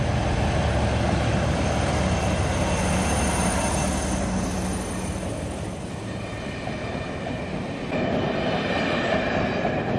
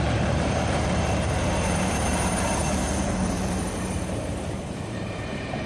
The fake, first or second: second